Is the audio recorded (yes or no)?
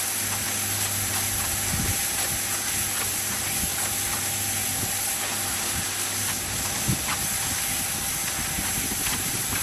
yes